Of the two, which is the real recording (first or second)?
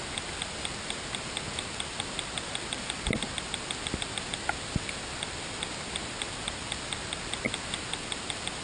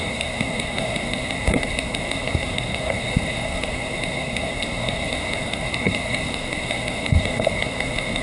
first